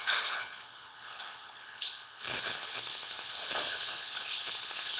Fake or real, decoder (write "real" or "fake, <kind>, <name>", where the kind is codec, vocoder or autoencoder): fake, codec, HILCodec